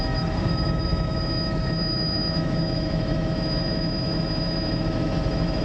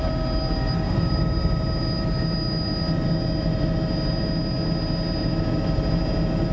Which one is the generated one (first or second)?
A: first